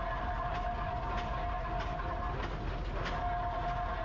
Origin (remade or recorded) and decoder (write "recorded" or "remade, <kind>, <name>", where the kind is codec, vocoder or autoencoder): recorded